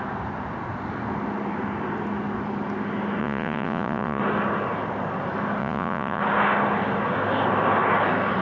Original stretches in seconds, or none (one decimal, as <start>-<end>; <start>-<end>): 0.0-3.2; 4.2-5.6; 6.2-8.4